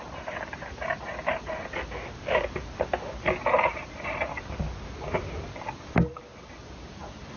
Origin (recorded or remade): recorded